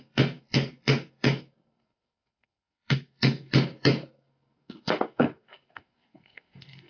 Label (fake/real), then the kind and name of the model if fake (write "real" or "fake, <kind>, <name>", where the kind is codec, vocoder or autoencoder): fake, codec, SNAC